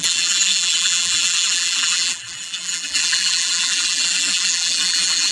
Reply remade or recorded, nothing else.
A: remade